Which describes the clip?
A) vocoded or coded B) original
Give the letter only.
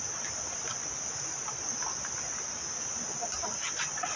B